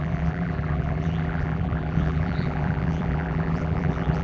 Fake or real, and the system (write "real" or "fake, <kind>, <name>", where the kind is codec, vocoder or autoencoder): fake, vocoder, BigVGAN v2